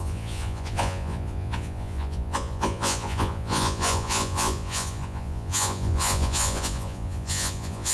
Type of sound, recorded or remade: remade